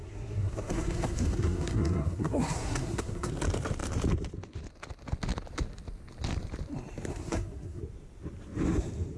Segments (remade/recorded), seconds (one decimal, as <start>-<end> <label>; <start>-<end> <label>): 0.0-3.3 remade; 3.3-7.1 recorded; 7.1-7.8 remade; 7.8-9.2 recorded